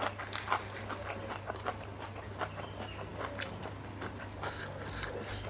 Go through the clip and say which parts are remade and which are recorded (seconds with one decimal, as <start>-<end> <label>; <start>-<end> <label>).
0.0-5.5 recorded